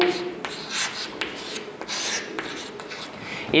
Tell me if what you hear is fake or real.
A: real